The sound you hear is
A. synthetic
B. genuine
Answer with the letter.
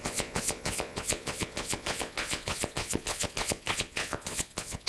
A